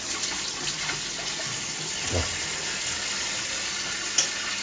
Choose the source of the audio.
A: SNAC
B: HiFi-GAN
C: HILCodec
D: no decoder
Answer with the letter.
D